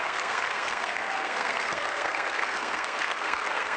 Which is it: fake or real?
fake